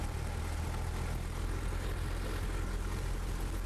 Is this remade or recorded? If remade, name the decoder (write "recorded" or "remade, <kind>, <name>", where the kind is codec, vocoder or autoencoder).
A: recorded